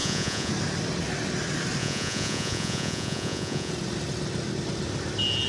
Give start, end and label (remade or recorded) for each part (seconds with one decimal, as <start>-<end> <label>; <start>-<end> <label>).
0.0-0.5 remade; 0.5-1.8 recorded; 1.8-3.7 remade; 3.7-5.5 recorded